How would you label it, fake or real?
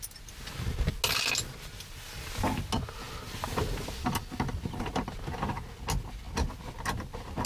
real